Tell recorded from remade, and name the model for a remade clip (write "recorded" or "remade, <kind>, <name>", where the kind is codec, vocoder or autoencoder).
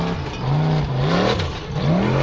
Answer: recorded